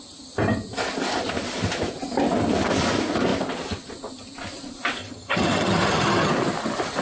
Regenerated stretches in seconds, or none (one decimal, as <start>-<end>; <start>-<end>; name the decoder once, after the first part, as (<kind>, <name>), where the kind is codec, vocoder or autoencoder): 5.0-6.3 (vocoder, HiFi-GAN)